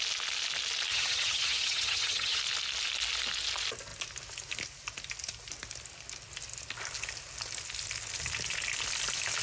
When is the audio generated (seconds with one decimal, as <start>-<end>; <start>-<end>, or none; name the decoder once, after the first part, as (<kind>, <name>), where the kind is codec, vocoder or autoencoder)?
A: 0.9-2.4 (vocoder, HiFi-GAN)